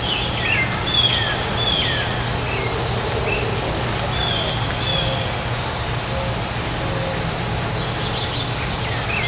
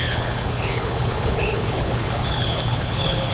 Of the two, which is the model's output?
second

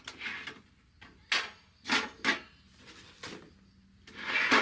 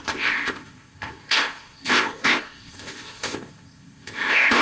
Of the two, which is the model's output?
second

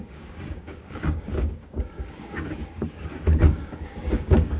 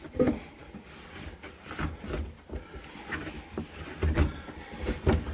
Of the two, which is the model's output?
first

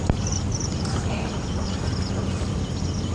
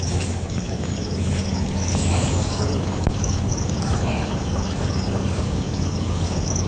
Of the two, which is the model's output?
second